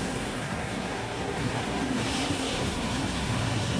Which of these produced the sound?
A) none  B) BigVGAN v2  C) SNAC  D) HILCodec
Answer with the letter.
C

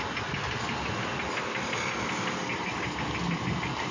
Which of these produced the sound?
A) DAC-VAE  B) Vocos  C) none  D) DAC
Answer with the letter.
C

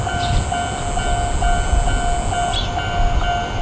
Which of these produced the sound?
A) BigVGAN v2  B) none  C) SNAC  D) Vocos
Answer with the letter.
B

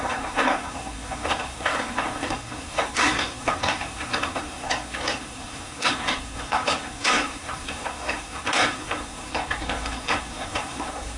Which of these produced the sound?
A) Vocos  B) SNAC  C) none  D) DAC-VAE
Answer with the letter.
B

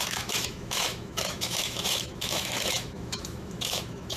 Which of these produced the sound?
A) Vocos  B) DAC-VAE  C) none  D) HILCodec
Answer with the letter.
B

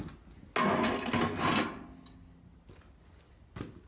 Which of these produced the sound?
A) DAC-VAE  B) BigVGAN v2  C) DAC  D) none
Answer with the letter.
D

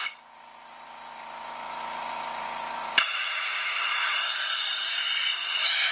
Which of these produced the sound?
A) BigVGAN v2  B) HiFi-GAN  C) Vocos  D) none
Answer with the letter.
D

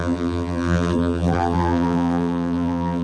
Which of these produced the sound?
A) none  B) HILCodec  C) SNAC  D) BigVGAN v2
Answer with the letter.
D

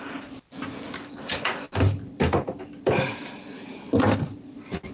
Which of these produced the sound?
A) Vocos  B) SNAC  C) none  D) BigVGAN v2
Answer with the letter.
D